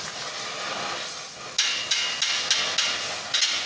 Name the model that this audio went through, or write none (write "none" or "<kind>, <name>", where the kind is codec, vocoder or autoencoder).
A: none